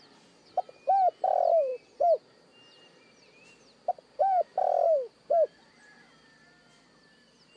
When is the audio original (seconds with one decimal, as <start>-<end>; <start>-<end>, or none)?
0.0-7.6